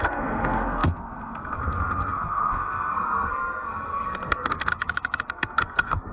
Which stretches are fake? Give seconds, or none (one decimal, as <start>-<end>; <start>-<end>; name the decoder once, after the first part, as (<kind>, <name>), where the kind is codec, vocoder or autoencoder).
0.0-4.7 (codec, SNAC); 5.3-6.1